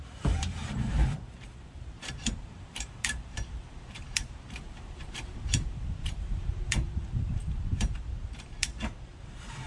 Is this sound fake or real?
fake